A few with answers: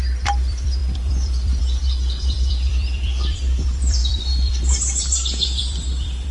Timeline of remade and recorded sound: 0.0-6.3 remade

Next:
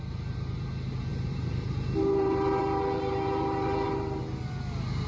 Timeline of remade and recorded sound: 0.0-1.1 recorded; 1.1-4.2 remade; 4.2-5.1 recorded

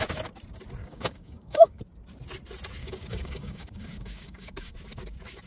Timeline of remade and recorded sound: 0.0-0.8 recorded; 0.8-1.8 remade; 1.8-2.8 recorded; 2.8-4.7 remade; 4.7-5.5 recorded

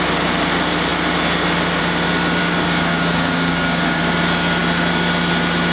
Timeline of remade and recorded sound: 0.0-2.4 recorded; 2.4-4.0 remade; 4.0-5.7 recorded

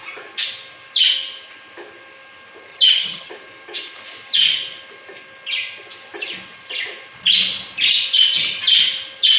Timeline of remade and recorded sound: 0.0-2.7 recorded; 2.7-3.3 remade; 3.3-9.4 recorded

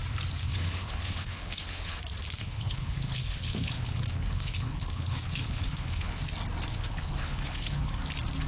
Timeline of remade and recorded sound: 0.0-0.4 recorded; 0.4-2.0 remade; 2.0-2.4 recorded; 2.4-6.2 remade; 6.2-6.7 recorded; 6.7-7.9 remade; 7.9-8.5 recorded

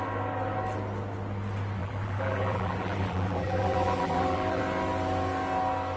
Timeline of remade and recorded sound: 0.0-1.8 recorded; 1.8-4.6 remade; 4.6-6.0 recorded

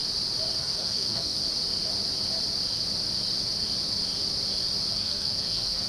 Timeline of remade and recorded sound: 0.0-0.6 recorded; 0.6-1.4 remade; 1.4-4.9 recorded; 4.9-5.9 remade